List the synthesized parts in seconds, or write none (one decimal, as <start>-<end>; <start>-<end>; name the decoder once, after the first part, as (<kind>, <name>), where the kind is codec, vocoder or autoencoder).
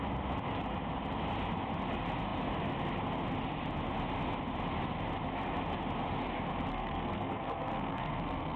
6.7-8.6 (codec, SNAC)